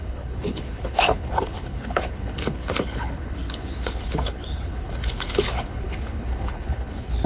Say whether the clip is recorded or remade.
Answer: remade